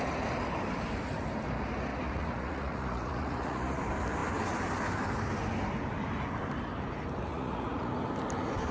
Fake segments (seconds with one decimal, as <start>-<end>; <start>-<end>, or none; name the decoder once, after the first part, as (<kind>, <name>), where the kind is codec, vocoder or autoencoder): 1.9-3.8 (vocoder, Vocos); 7.3-7.9